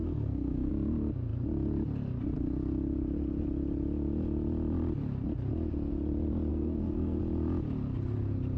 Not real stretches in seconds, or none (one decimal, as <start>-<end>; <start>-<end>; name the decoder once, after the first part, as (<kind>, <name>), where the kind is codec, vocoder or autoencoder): 0.0-0.7 (codec, SNAC); 6.5-7.2

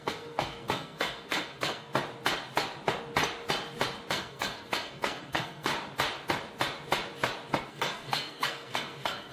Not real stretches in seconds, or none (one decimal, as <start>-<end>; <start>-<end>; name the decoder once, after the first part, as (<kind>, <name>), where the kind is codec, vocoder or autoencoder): 0.0-1.9 (codec, SNAC); 4.1-5.7; 7.7-9.3

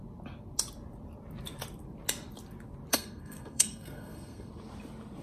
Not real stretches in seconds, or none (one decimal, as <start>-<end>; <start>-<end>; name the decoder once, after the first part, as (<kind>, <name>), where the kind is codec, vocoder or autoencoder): 2.9-4.5 (codec, SNAC)